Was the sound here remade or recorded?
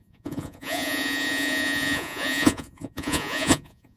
remade